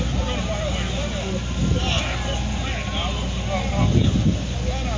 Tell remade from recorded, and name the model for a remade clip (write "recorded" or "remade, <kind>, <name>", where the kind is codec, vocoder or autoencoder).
recorded